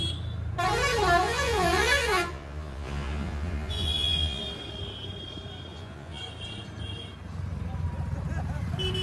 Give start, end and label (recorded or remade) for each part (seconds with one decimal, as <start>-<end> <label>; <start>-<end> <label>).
0.0-1.2 recorded; 1.2-4.4 remade; 4.4-5.7 recorded; 5.7-6.2 remade; 6.2-9.0 recorded